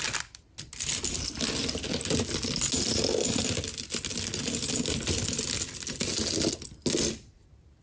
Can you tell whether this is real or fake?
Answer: real